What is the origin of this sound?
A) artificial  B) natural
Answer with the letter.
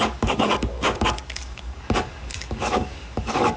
A